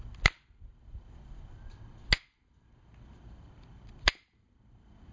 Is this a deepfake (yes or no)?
no